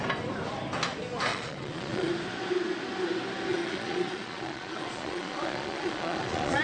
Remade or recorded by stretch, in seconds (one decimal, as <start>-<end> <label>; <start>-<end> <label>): 0.0-1.3 recorded; 1.3-2.1 remade; 2.1-3.5 recorded; 3.5-6.6 remade